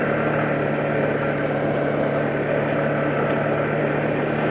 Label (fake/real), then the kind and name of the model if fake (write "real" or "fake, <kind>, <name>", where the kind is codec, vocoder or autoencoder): real